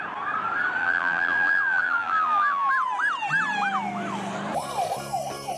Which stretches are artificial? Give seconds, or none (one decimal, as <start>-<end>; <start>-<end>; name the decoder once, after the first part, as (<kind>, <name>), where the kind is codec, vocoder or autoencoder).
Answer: 0.8-2.7 (vocoder, BigVGAN v2)